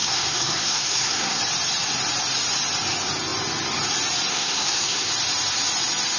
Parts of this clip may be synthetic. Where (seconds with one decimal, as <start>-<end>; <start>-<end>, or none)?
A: 0.0-1.4; 4.3-5.1

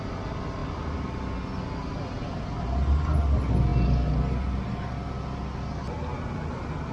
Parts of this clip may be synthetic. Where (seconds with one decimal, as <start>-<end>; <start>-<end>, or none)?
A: none

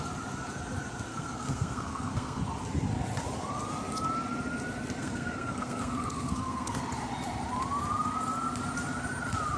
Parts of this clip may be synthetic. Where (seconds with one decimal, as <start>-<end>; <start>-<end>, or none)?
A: 1.1-2.4; 5.0-6.8

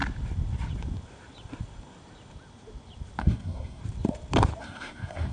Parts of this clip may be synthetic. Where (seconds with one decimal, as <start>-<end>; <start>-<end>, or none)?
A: 3.2-3.8; 4.6-5.3

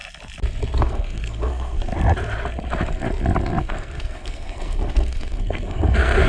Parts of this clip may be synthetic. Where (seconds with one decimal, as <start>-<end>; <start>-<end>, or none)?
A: 0.8-1.9; 3.6-6.3